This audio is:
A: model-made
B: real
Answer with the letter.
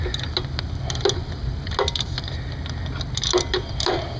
B